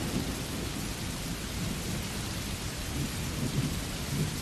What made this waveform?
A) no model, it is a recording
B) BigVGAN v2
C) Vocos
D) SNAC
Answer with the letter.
A